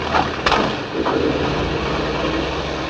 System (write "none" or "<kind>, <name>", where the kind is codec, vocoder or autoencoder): none